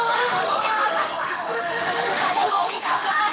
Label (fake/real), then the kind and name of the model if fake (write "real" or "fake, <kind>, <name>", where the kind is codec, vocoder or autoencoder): fake, autoencoder, DAC-VAE